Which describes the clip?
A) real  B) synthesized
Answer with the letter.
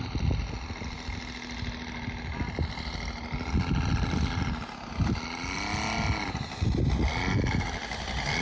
A